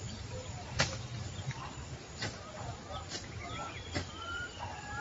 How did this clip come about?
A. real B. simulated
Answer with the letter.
B